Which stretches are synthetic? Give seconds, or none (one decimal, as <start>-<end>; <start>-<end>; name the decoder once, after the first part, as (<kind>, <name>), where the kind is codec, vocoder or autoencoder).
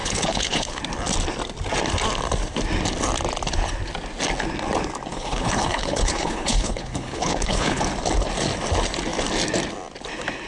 0.0-0.8 (codec, HILCodec); 5.1-7.8